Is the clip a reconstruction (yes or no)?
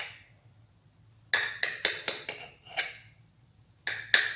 no